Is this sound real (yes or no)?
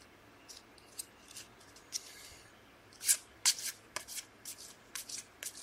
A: yes